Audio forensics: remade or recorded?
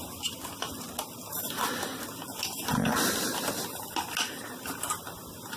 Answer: recorded